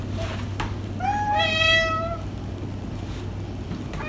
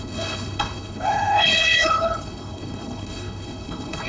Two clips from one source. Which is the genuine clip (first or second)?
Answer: first